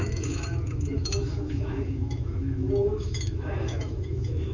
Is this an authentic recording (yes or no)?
no